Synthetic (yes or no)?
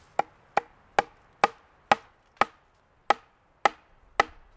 no